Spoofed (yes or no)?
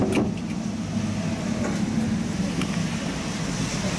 no